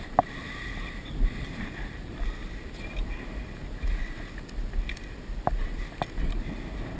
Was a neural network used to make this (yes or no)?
no